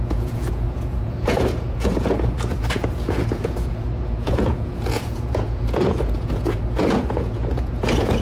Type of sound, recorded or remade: remade